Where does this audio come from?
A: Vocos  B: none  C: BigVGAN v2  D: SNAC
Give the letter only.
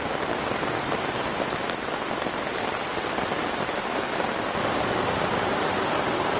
C